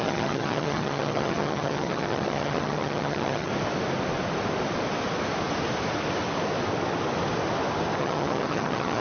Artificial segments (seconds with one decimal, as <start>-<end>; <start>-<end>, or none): 0.0-3.5; 8.0-9.0

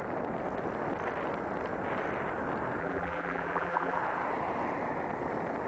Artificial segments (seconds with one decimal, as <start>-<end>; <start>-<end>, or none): 2.8-4.0

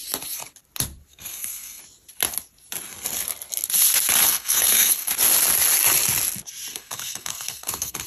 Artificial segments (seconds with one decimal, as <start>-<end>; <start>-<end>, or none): 1.1-1.8; 4.2-5.1; 6.7-8.1

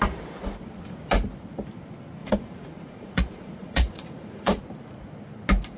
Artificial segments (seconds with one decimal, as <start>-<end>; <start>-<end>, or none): 2.2-4.6

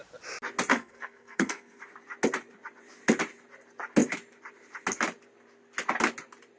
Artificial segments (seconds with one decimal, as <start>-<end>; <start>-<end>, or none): 0.7-1.8

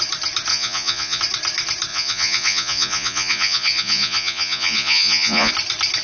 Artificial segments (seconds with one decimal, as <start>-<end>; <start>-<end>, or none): 0.5-1.2; 1.9-5.5